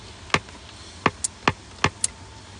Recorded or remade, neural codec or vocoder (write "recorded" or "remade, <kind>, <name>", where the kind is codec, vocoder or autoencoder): recorded